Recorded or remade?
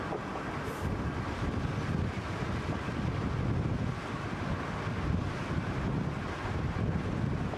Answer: recorded